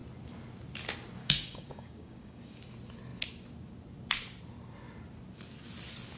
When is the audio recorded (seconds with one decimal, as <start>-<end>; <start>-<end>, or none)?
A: 0.0-1.2; 2.6-6.2